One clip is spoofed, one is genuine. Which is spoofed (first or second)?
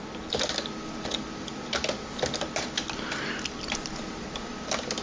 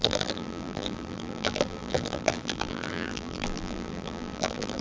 second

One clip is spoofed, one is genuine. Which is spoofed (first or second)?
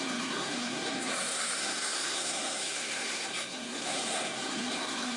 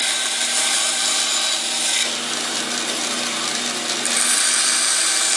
first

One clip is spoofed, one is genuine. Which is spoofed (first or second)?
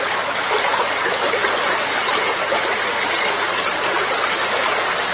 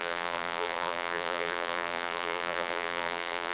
second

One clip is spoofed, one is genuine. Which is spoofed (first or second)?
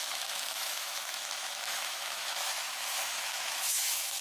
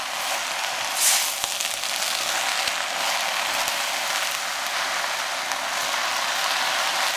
first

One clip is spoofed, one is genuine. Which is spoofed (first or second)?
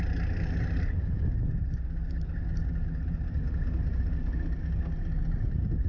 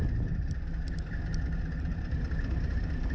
second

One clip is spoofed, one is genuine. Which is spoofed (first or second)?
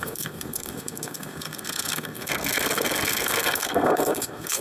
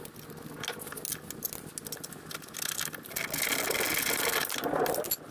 first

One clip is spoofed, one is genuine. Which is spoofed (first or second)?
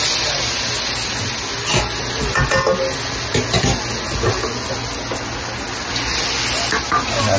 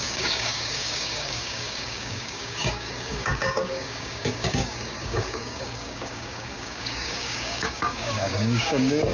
second